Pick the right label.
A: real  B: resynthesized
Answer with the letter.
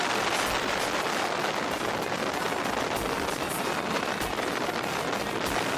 A